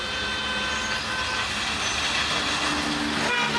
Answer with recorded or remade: recorded